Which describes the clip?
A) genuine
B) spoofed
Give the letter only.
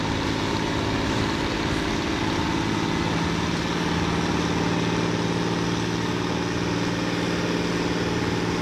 A